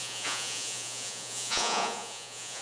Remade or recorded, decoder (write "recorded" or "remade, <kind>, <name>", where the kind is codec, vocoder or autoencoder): remade, vocoder, Vocos